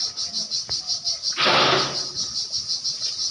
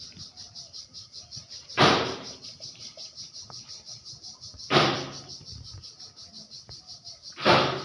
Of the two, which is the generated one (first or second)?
second